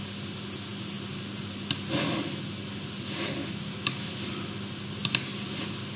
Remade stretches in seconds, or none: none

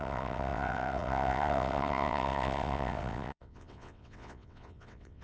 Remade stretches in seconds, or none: 0.0-5.2 (vocoder, WaveNeXt)

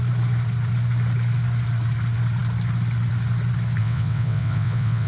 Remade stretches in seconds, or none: 3.8-5.1 (vocoder, WaveNeXt)

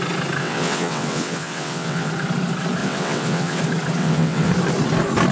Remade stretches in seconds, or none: 0.4-2.1 (vocoder, WaveNeXt); 2.8-3.6; 4.0-4.5

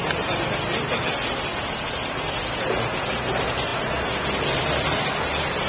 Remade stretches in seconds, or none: none